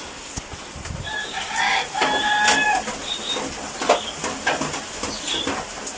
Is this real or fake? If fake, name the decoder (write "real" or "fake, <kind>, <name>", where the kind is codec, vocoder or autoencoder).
real